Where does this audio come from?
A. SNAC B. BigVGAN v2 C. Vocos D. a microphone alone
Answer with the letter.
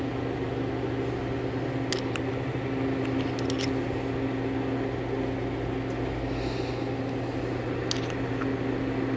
D